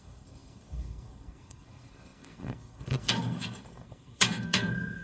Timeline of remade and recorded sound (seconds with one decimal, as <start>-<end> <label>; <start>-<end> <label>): 0.0-5.0 remade